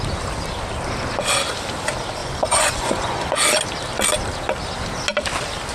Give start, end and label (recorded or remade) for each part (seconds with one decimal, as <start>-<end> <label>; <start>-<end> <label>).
0.0-2.2 recorded; 2.2-3.4 remade; 3.4-5.7 recorded